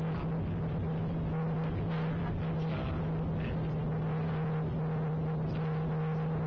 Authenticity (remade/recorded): recorded